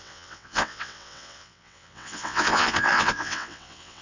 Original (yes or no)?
no